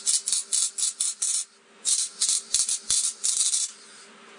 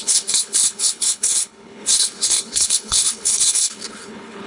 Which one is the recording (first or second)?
first